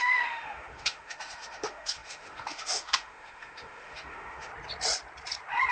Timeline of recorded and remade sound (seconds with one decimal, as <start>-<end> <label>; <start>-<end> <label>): 0.0-4.5 remade; 4.5-5.7 recorded